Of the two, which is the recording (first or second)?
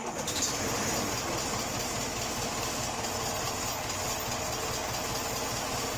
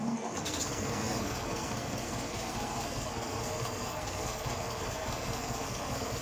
first